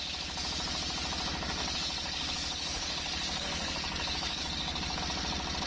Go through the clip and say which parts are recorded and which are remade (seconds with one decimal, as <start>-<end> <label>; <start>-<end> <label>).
0.0-1.6 recorded; 1.6-5.0 remade; 5.0-5.7 recorded